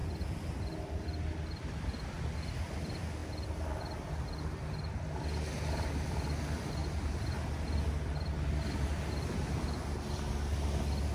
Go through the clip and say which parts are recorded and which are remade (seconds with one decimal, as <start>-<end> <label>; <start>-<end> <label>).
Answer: 0.0-11.1 recorded